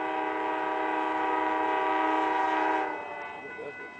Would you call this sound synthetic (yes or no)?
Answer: no